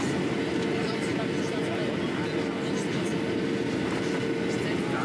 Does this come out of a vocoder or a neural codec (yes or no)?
no